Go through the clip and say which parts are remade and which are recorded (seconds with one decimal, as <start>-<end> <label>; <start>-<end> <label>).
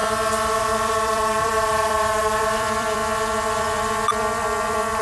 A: 0.0-0.6 recorded; 0.6-3.0 remade; 3.0-3.6 recorded; 3.6-5.0 remade